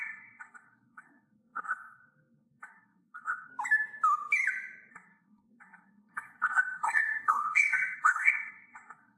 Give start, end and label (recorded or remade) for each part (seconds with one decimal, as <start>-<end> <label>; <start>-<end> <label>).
0.0-3.5 remade; 3.5-4.9 recorded; 4.9-9.2 remade